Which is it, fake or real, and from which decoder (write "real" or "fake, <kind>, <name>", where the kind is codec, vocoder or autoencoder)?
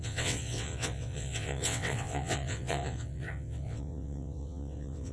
fake, vocoder, WaveNeXt